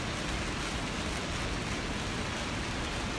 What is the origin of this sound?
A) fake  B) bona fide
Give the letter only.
B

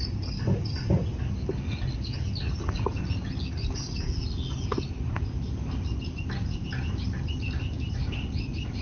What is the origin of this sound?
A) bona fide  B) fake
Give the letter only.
A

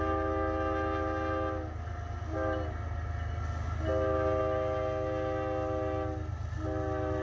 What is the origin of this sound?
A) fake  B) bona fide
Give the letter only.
B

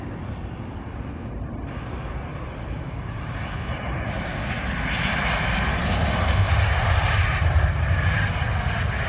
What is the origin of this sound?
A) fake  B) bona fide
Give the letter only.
B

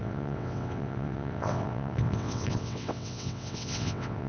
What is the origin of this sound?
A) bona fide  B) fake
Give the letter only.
B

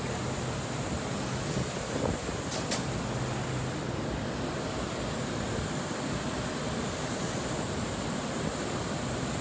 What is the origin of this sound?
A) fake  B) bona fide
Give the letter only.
B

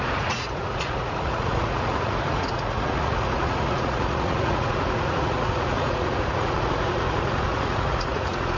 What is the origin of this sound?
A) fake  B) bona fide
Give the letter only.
A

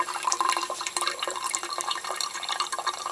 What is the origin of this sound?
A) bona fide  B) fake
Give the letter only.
B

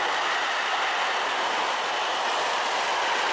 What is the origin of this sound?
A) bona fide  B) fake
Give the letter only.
B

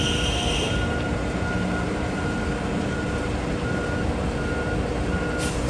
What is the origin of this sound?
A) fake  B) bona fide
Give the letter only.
A